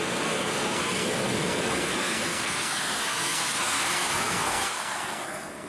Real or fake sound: fake